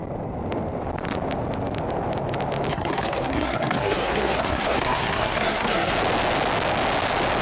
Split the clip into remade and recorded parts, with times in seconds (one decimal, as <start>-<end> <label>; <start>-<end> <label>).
0.0-2.7 recorded; 2.7-5.9 remade; 5.9-7.4 recorded